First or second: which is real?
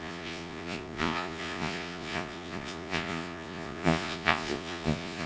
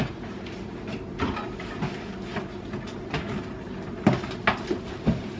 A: second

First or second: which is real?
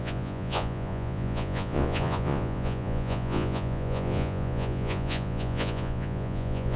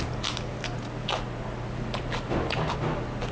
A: second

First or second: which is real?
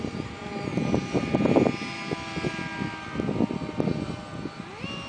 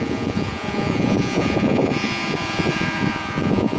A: first